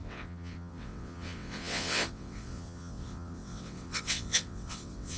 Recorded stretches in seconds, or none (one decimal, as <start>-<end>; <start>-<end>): none